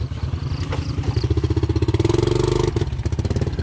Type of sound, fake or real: real